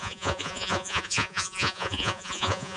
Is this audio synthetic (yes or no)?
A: yes